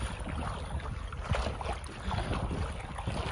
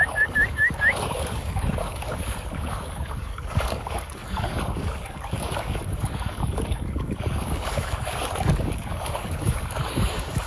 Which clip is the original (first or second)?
first